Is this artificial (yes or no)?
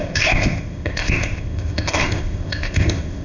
yes